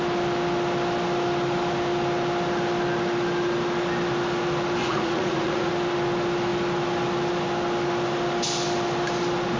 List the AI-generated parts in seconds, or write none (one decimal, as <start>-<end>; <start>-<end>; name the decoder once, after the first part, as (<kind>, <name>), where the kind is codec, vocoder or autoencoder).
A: 4.8-5.7 (vocoder, Vocos)